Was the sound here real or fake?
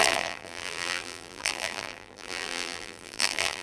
fake